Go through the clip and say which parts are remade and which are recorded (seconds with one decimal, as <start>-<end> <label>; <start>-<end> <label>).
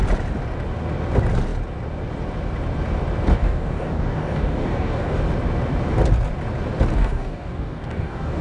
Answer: 0.0-3.3 recorded; 3.3-5.2 remade; 5.2-6.9 recorded; 6.9-8.4 remade